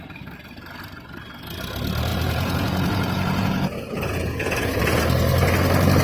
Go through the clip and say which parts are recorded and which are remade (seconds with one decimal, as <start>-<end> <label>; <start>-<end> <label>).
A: 0.0-2.1 recorded; 2.1-4.8 remade; 4.8-6.0 recorded